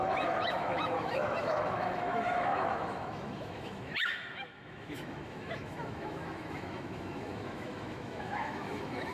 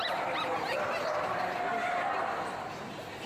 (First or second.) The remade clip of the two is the first